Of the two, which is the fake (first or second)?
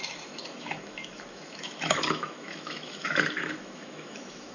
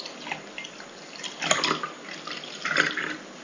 first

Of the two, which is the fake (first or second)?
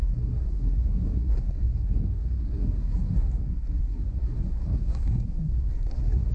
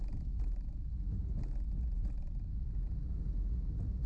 first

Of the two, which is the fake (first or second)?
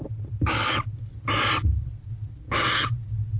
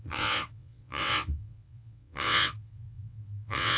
second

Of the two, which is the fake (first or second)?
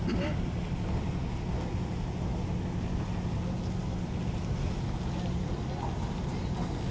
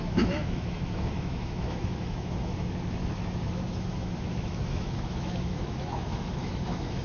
second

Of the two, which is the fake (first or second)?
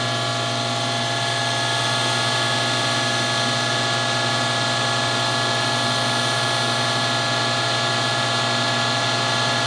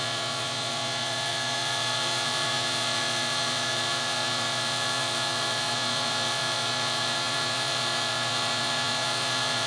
second